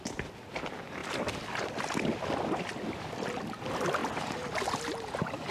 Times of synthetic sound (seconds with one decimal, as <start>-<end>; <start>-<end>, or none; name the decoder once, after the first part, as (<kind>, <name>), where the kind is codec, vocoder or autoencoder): none